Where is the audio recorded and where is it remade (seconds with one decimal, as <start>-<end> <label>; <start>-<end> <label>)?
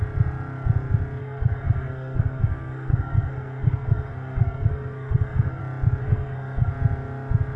0.0-1.2 recorded; 1.2-5.6 remade; 5.6-6.0 recorded; 6.0-6.7 remade; 6.7-7.6 recorded